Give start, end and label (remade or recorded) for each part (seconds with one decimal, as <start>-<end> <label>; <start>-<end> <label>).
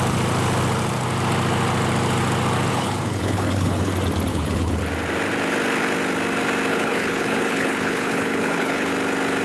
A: 0.0-2.7 recorded; 2.7-3.9 remade; 3.9-4.3 recorded; 4.3-4.8 remade; 4.8-6.7 recorded; 6.7-8.9 remade; 8.9-9.4 recorded